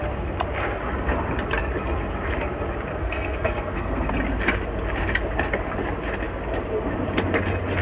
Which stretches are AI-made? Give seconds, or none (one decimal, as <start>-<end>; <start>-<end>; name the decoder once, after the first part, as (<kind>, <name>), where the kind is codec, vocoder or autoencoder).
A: 2.9-4.1 (codec, SNAC)